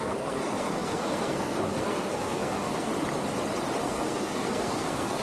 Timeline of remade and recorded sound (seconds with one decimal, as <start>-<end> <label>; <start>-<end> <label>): 0.0-2.9 remade; 2.9-3.8 recorded; 3.8-5.2 remade